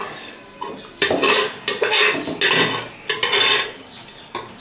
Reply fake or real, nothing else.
real